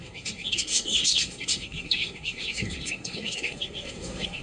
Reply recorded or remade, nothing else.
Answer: remade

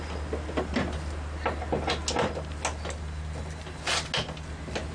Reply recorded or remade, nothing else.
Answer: recorded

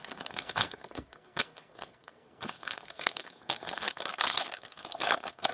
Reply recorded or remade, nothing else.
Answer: remade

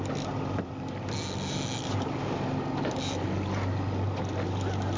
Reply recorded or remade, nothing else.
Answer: recorded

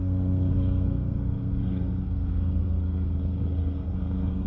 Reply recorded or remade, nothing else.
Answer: remade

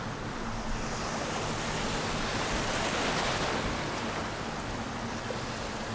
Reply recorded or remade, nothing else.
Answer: recorded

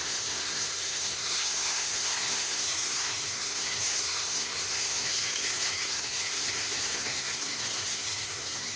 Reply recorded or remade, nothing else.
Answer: remade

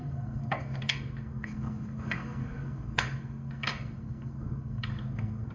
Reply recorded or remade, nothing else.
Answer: remade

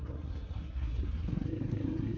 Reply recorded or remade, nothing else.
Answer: remade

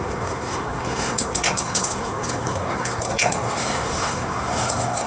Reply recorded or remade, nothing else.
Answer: remade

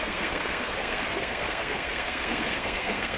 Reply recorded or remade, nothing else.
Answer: remade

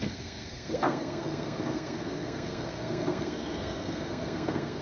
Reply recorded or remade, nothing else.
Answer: remade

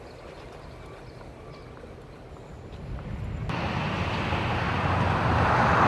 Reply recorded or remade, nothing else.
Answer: recorded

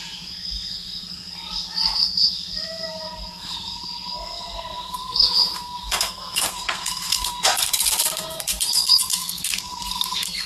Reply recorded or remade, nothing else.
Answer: remade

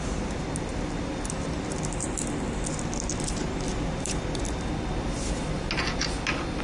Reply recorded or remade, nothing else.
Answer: recorded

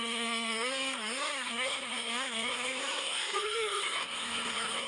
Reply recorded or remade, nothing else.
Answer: remade